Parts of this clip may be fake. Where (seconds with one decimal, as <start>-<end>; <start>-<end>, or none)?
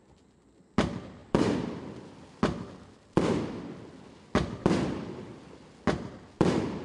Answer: none